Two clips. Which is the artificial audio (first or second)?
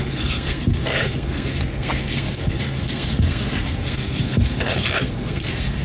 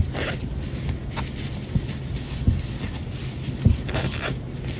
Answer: first